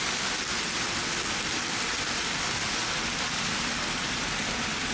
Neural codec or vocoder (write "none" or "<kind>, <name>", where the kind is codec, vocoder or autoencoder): none